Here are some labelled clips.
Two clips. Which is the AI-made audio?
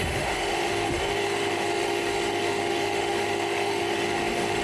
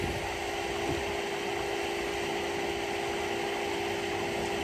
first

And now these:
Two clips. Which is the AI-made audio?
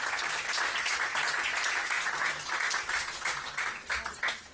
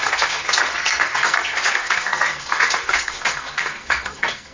second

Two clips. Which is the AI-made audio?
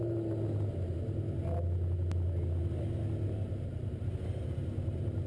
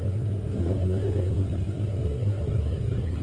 second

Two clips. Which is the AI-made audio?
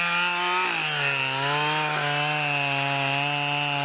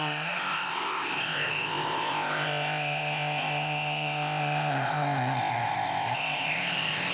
second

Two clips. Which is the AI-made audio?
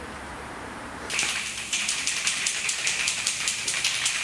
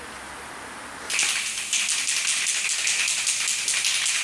first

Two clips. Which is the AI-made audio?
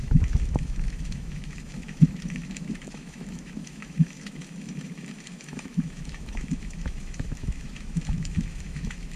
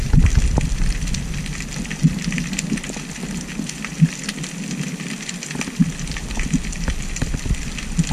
first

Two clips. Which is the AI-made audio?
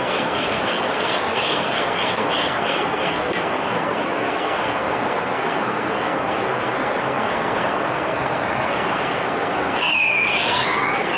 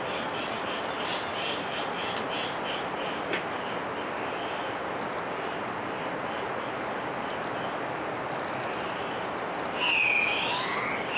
first